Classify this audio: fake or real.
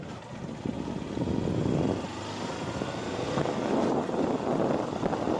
real